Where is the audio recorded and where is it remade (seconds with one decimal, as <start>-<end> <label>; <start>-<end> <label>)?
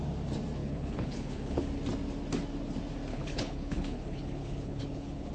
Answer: 0.0-0.6 recorded; 0.6-1.7 remade; 1.7-3.1 recorded; 3.1-5.3 remade